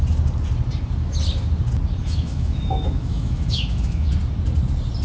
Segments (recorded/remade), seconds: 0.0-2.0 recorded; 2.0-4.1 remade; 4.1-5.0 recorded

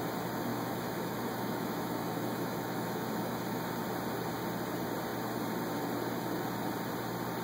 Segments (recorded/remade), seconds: 0.0-0.5 recorded; 0.5-3.6 remade; 3.6-7.4 recorded

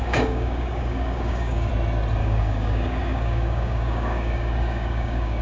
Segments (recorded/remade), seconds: 0.0-1.7 remade; 1.7-2.2 recorded; 2.2-5.4 remade

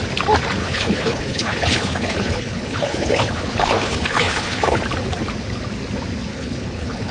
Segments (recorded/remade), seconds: 0.0-0.6 recorded; 0.6-4.8 remade; 4.8-6.3 recorded; 6.3-7.1 remade

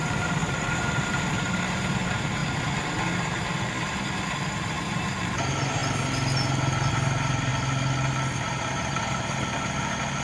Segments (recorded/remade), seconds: 0.0-2.4 remade; 2.4-4.8 recorded; 4.8-5.8 remade; 5.8-6.9 recorded; 6.9-7.5 remade; 7.5-8.4 recorded; 8.4-10.2 remade

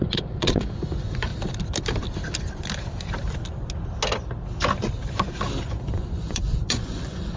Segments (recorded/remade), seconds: 0.0-1.3 remade; 1.3-5.6 recorded; 5.6-7.4 remade

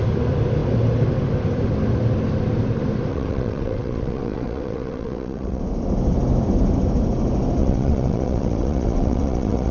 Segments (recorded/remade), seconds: 0.0-3.1 recorded; 3.1-5.6 remade; 5.6-7.6 recorded; 7.6-9.7 remade